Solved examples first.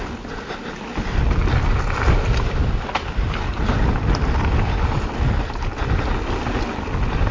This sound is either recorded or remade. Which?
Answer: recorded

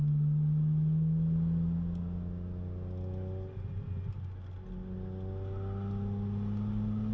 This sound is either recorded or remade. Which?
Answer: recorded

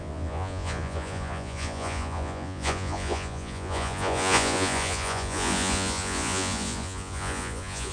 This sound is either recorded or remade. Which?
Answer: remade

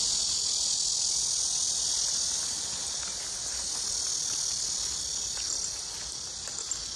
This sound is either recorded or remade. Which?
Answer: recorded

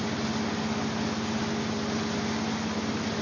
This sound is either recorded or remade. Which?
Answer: recorded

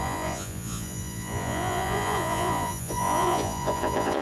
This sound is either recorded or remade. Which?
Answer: remade